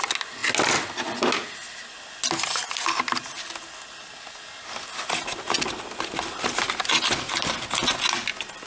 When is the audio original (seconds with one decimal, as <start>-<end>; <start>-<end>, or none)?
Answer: 0.0-8.7